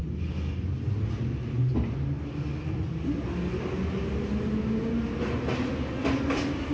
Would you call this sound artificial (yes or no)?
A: no